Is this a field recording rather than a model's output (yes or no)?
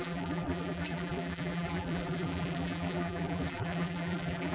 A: no